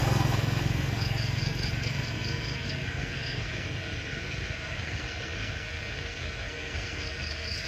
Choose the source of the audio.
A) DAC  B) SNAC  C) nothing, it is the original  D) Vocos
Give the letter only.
B